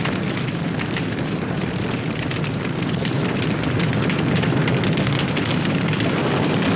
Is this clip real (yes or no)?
no